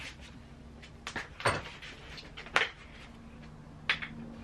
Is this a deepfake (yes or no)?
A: no